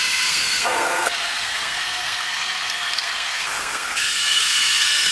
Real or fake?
fake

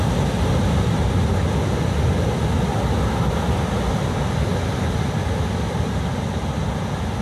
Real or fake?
real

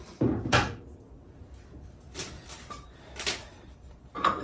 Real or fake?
fake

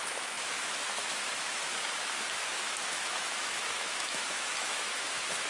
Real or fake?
fake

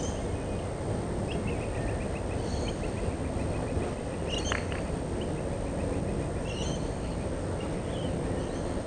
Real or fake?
real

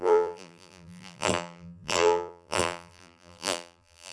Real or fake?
fake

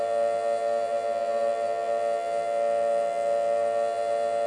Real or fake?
fake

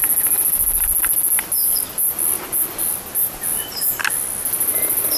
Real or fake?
real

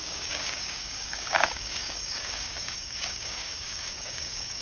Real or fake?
fake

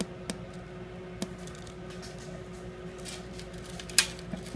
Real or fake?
real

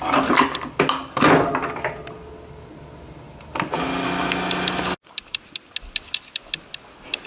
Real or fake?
real